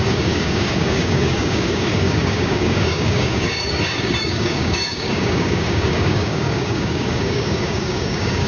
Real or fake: fake